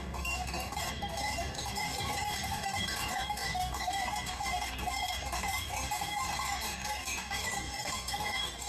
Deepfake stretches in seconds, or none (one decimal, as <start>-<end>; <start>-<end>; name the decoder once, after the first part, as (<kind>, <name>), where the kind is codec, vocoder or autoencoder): 0.0-8.7 (codec, DAC)